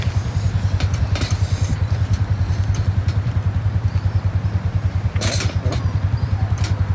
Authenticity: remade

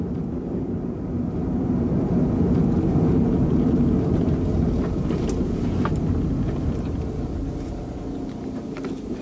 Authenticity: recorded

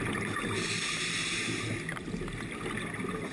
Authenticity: recorded